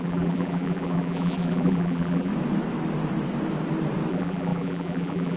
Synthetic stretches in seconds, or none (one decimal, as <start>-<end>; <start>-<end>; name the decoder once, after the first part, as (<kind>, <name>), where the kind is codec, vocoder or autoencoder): 0.0-2.3 (vocoder, BigVGAN v2); 4.1-5.4